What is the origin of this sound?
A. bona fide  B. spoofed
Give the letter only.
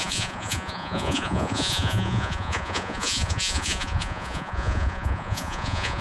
B